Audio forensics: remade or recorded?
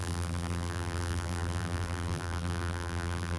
remade